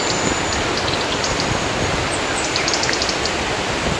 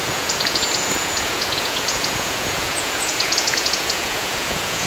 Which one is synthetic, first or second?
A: second